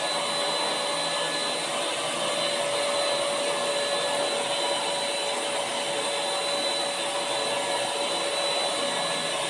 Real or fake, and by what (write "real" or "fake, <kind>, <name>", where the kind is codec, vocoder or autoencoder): real